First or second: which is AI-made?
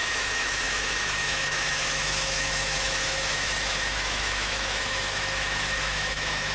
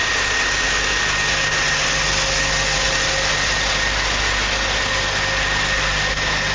first